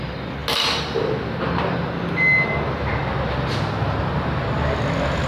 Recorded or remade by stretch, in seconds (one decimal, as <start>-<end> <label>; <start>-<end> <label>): 0.0-5.3 recorded